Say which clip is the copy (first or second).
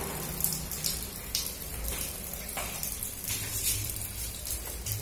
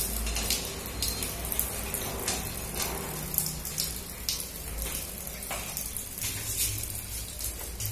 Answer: first